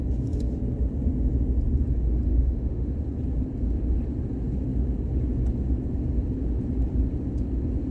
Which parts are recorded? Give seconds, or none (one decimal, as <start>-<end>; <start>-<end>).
0.0-2.3; 2.9-7.9